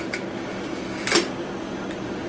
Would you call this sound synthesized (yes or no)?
no